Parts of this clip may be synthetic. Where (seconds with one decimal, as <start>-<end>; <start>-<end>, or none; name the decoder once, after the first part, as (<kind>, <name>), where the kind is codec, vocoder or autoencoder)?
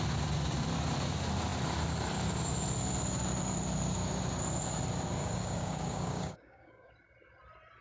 5.2-6.9 (codec, DAC)